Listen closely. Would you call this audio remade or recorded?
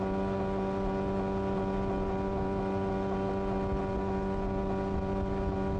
recorded